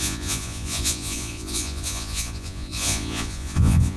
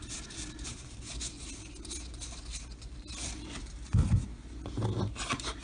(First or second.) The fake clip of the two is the first